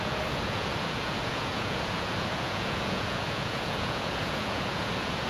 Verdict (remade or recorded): remade